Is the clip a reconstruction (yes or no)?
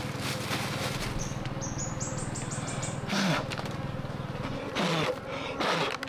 no